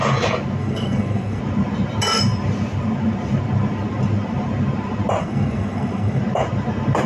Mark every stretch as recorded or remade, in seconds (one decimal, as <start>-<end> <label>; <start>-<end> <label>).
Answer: 0.0-0.6 recorded; 0.6-1.4 remade; 1.4-5.2 recorded; 5.2-6.2 remade; 6.2-7.1 recorded